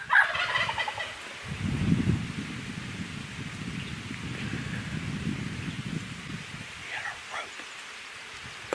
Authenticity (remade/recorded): recorded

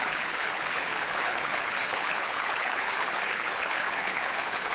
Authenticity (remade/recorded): remade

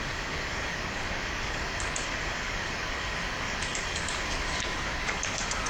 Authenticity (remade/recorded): remade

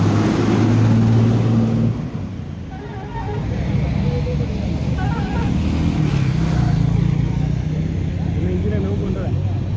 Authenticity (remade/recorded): recorded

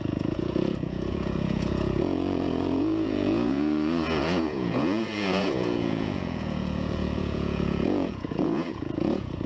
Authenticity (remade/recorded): remade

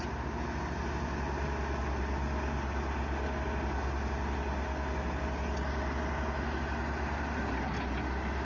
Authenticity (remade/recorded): recorded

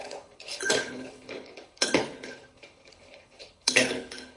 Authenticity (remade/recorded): remade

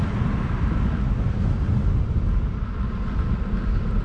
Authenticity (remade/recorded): recorded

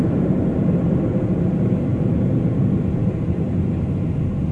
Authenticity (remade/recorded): recorded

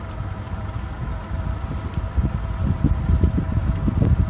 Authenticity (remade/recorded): recorded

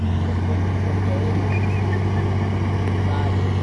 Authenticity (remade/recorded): recorded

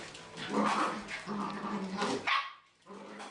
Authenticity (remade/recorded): recorded